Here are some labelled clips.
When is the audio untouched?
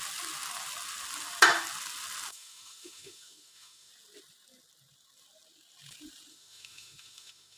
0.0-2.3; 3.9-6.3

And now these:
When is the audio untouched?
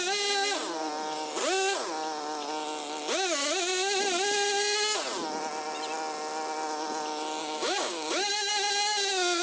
0.0-7.4; 8.5-9.4